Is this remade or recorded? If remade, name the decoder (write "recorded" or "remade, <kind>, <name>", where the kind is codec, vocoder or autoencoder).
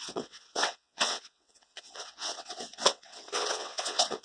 remade, vocoder, WaveNeXt